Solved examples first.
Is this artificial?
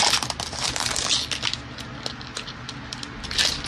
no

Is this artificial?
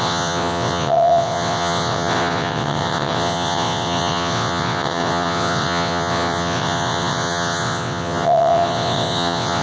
yes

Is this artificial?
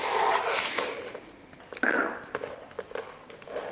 no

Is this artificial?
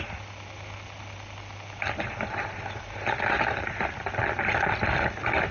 no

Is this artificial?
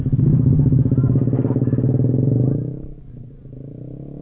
no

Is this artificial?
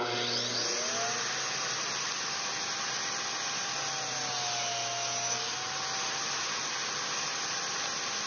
no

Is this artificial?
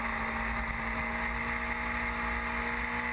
no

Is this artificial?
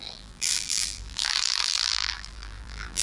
yes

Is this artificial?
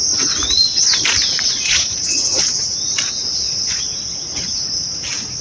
yes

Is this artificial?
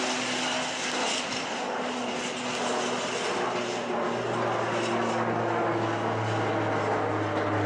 no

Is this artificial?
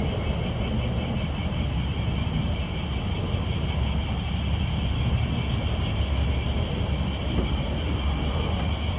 no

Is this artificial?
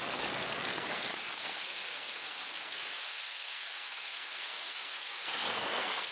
yes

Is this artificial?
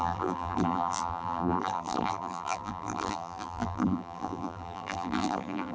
yes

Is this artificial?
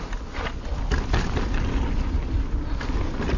no